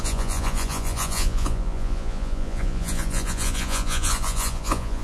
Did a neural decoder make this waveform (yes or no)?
yes